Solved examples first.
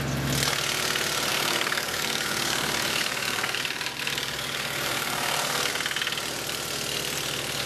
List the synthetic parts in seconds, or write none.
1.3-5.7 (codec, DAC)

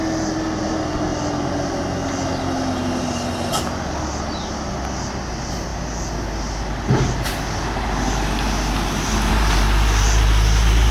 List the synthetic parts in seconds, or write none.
none